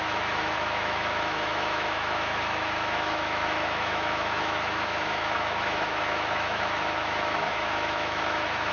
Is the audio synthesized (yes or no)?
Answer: yes